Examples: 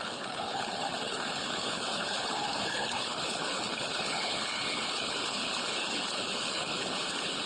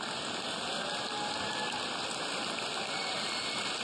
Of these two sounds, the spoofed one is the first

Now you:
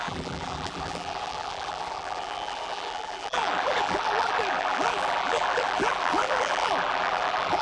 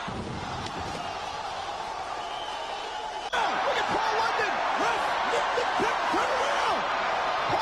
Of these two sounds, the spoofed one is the first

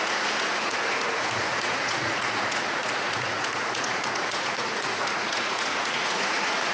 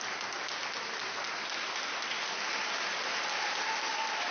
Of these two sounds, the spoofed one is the first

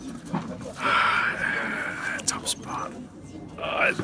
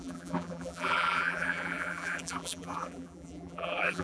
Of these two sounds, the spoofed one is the second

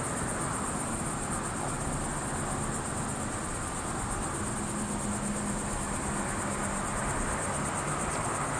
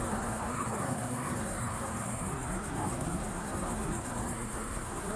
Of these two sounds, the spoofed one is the second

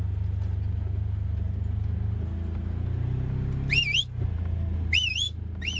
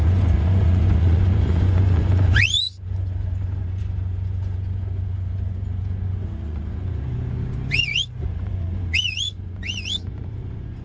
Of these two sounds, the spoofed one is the second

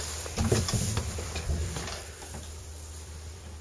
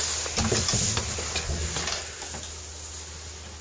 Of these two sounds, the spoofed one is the first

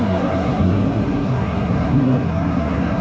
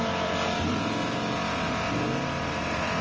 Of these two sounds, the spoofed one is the first